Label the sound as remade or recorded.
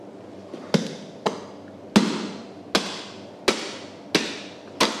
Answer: recorded